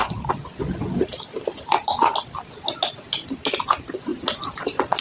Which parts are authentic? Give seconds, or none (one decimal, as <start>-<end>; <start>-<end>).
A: 0.0-5.0